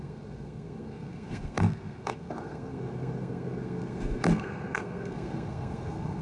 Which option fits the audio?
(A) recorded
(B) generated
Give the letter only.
B